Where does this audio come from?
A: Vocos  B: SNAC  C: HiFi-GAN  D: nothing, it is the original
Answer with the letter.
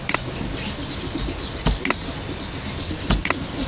D